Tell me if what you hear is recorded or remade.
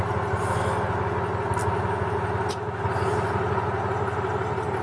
recorded